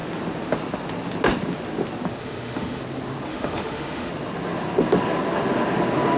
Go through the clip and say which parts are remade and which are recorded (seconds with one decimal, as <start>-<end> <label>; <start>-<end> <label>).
0.0-2.2 recorded; 2.2-2.8 remade; 2.8-3.3 recorded; 3.3-4.1 remade; 4.1-6.2 recorded